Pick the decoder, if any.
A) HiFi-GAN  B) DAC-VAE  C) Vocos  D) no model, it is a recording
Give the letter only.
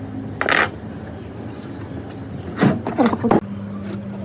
D